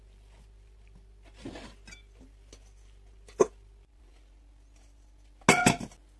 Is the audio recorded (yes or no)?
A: yes